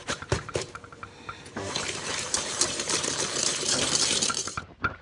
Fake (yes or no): yes